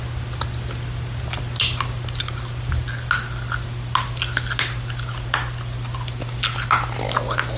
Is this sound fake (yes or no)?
no